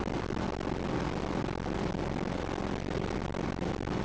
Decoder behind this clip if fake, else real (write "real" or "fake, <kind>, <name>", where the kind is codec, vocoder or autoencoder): real